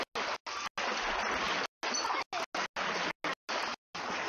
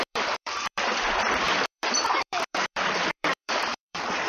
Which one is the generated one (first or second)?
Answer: second